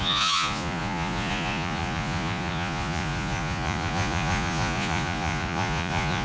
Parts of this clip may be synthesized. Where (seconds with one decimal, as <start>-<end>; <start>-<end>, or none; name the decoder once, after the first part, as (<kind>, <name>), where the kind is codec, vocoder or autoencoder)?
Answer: 0.0-6.2 (vocoder, Vocos)